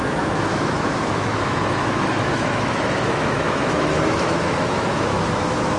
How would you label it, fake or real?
fake